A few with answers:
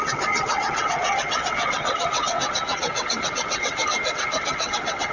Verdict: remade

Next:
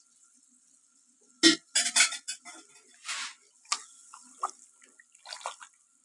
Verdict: recorded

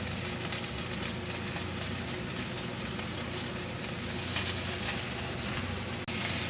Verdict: recorded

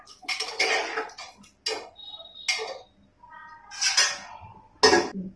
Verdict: recorded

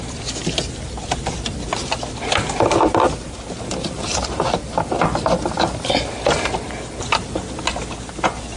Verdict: recorded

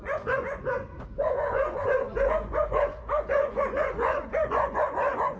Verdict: remade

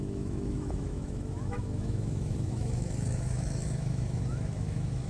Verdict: remade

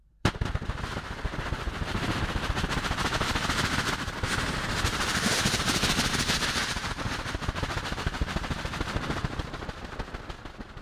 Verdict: remade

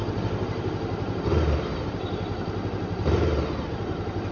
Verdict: recorded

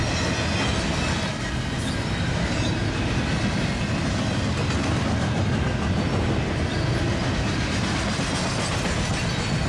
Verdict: recorded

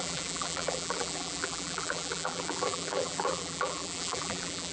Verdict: remade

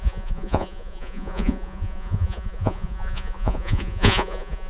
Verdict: remade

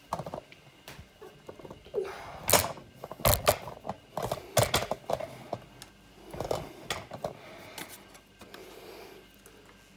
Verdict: recorded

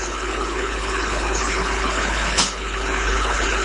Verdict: remade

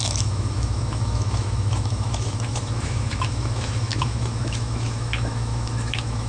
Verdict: remade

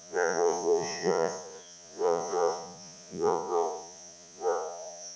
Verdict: remade